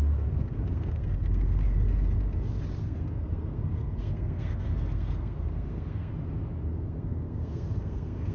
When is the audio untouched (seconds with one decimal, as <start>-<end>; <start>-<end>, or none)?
1.6-2.8; 6.1-6.7